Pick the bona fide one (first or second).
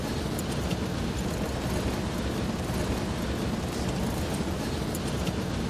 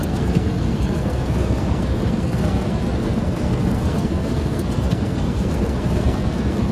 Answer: first